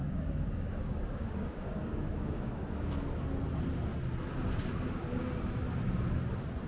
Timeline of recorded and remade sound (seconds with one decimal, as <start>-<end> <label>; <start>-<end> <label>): 0.0-2.9 remade; 2.9-6.7 recorded